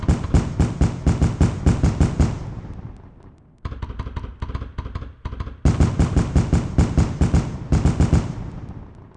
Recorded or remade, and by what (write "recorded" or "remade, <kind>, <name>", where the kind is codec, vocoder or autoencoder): recorded